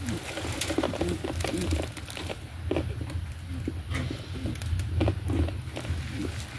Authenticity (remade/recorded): recorded